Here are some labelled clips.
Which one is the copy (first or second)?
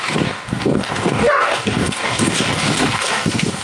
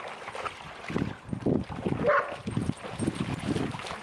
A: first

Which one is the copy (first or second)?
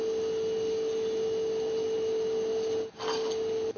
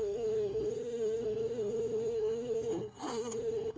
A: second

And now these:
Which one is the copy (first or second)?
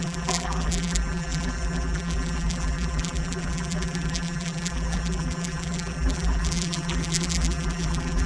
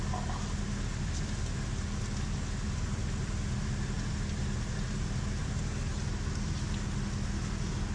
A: first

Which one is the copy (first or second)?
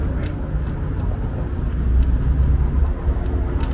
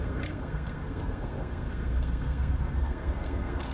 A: second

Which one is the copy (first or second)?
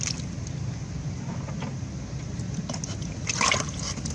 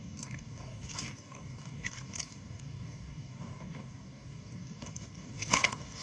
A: second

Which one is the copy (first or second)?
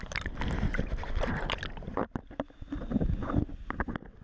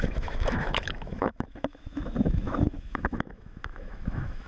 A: second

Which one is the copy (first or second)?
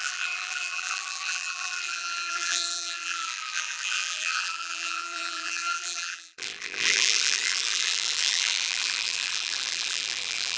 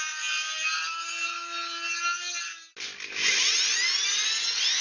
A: first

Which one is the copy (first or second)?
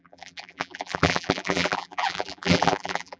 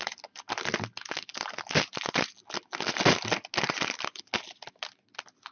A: first